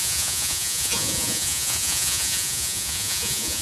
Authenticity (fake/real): fake